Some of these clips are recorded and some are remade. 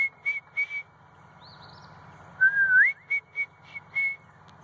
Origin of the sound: recorded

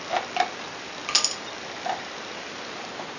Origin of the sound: recorded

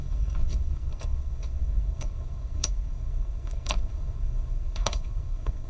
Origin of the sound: remade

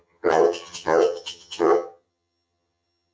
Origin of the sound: remade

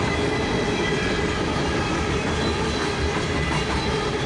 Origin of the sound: recorded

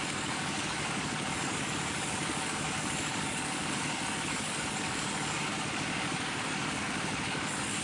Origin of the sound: remade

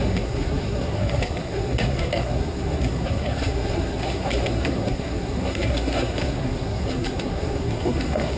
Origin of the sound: remade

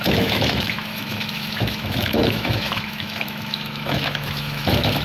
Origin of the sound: remade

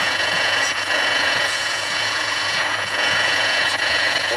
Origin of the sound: remade